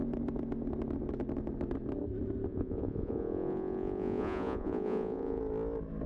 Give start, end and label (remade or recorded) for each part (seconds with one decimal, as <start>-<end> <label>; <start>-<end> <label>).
0.0-2.5 recorded; 2.5-5.4 remade; 5.4-6.1 recorded